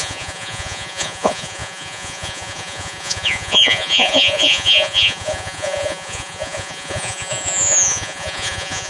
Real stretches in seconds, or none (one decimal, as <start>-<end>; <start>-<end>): none